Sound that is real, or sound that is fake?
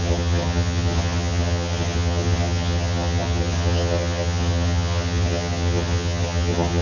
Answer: fake